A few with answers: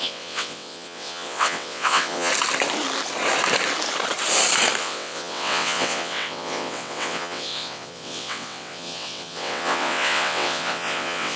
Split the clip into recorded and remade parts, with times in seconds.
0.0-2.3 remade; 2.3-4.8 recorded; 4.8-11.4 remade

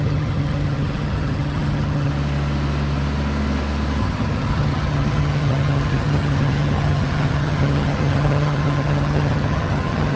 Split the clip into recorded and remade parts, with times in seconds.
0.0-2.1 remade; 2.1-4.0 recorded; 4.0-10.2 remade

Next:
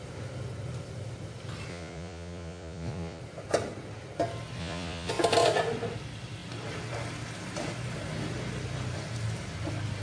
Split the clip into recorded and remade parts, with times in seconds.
0.0-1.7 recorded; 1.7-3.2 remade; 3.2-4.6 recorded; 4.6-5.1 remade; 5.1-10.0 recorded

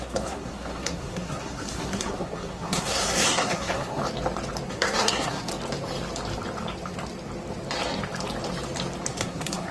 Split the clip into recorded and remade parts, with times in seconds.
0.0-4.0 remade; 4.0-4.7 recorded; 4.7-5.5 remade; 5.5-9.1 recorded; 9.1-9.7 remade

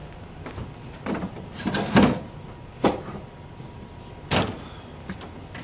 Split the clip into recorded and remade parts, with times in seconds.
0.0-5.6 recorded

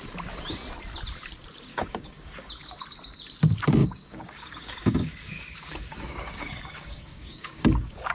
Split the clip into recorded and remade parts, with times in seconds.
0.0-1.7 recorded; 1.7-2.5 remade; 2.5-3.8 recorded; 3.8-8.1 remade

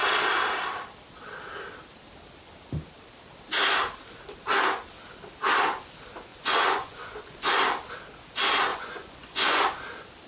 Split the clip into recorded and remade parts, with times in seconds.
0.0-6.3 recorded; 6.3-7.5 remade; 7.5-8.7 recorded; 8.7-9.6 remade; 9.6-10.3 recorded